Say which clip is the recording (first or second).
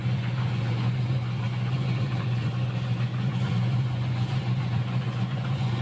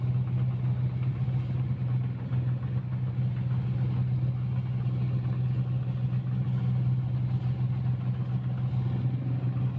second